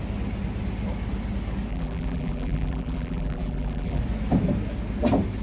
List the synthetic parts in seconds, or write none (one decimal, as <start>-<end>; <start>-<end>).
1.7-4.0